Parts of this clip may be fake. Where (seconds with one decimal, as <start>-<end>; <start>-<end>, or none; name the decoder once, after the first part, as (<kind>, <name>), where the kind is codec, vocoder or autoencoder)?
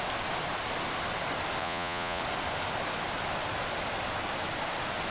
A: 1.6-2.2 (vocoder, Vocos)